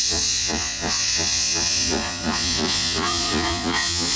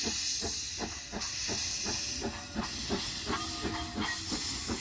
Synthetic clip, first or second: first